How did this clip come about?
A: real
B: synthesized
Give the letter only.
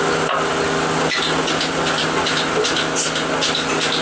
A